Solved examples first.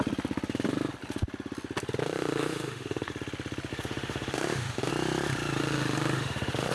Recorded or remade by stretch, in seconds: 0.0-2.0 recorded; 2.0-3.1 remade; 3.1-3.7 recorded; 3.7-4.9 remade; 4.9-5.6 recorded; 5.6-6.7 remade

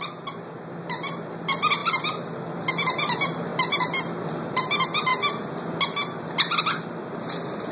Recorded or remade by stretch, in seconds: 0.0-7.7 recorded

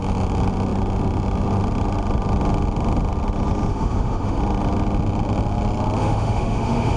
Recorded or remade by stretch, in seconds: 0.0-3.7 recorded; 3.7-4.4 remade; 4.4-6.0 recorded; 6.0-7.0 remade

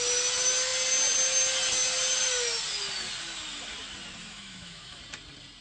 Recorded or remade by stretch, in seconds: 0.0-4.2 recorded; 4.2-5.0 remade; 5.0-5.6 recorded

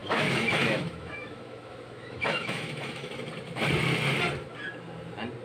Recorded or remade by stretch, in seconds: 0.0-3.1 remade; 3.1-5.4 recorded